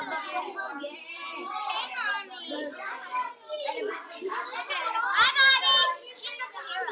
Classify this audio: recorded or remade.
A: recorded